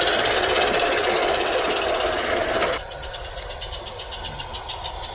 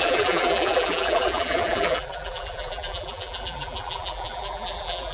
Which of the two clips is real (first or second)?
first